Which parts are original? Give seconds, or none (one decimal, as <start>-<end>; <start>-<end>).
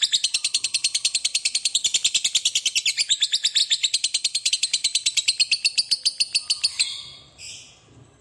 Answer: 0.0-8.2